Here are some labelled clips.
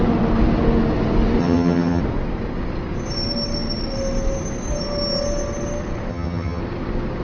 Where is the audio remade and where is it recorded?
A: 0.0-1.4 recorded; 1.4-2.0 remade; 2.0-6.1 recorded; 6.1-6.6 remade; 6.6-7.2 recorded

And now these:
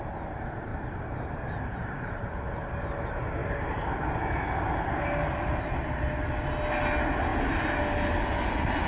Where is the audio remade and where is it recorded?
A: 0.0-0.7 recorded; 0.7-2.7 remade; 2.7-3.4 recorded; 3.4-5.0 remade; 5.0-8.9 recorded

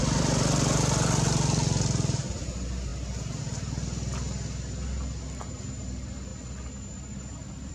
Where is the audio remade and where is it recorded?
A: 0.0-7.7 recorded

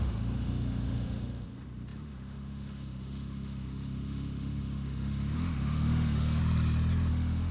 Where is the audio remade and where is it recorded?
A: 0.0-6.4 remade; 6.4-7.1 recorded; 7.1-7.5 remade

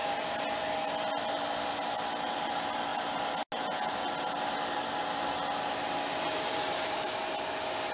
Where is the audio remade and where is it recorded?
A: 0.0-6.3 recorded; 6.3-7.3 remade; 7.3-7.9 recorded